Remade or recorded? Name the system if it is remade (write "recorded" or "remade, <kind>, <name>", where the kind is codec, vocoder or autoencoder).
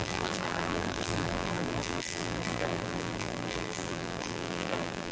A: remade, vocoder, BigVGAN v2